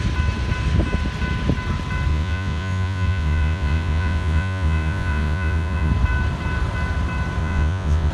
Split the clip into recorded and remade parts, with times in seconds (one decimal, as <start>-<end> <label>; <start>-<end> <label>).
0.0-2.1 recorded; 2.1-5.9 remade; 5.9-7.4 recorded; 7.4-8.1 remade

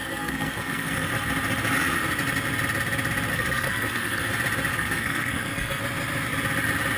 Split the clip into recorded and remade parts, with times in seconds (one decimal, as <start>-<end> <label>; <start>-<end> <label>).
0.0-1.1 remade; 1.1-3.3 recorded; 3.3-4.3 remade; 4.3-4.7 recorded; 4.7-5.8 remade; 5.8-7.0 recorded

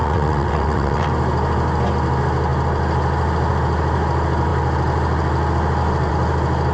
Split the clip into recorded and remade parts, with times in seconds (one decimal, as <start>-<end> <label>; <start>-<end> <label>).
0.0-1.1 remade; 1.1-6.7 recorded